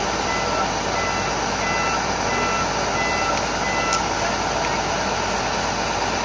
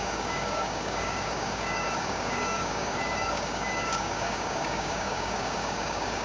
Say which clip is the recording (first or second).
first